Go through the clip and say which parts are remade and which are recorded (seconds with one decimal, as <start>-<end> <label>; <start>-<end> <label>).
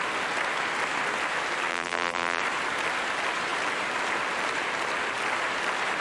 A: 0.0-1.7 recorded; 1.7-2.4 remade; 2.4-6.0 recorded